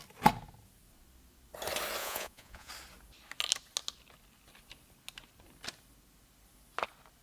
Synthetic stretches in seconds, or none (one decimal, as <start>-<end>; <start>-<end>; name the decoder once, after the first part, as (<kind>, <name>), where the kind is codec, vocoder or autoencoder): 2.0-2.7 (vocoder, Vocos)